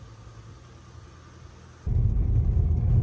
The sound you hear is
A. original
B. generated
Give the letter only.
A